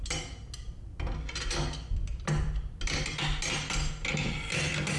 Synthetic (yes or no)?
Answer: no